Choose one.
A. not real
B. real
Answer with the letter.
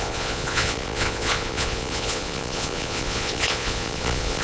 A